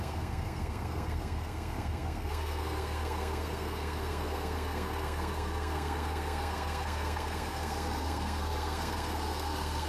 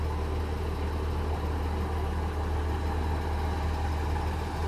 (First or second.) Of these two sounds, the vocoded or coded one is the first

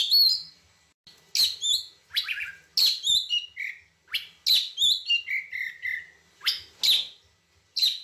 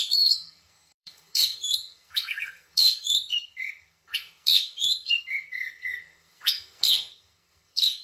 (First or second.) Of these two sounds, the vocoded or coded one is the second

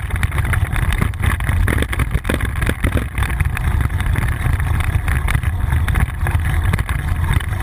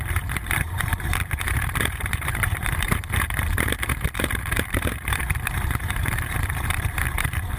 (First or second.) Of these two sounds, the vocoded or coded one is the second